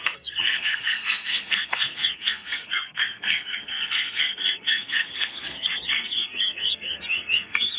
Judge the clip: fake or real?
fake